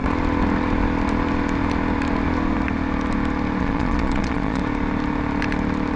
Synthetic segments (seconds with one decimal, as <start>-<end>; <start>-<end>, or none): 3.6-4.6